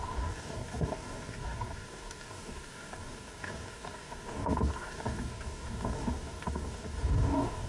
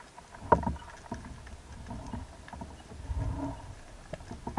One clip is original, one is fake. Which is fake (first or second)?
first